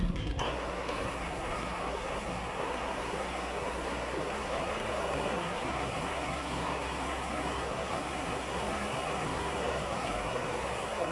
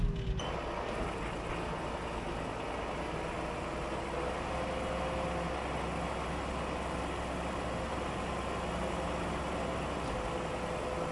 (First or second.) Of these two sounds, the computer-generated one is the first